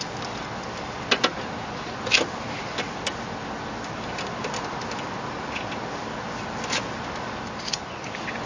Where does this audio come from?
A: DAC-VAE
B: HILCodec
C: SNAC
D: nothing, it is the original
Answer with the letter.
D